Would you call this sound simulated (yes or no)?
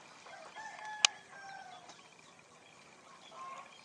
no